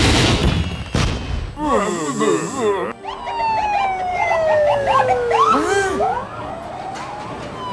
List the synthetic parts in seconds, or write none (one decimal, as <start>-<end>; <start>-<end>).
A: 4.1-6.5